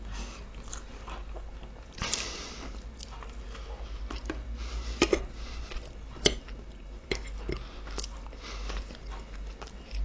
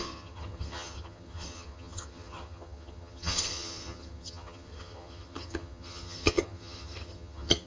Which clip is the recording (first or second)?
first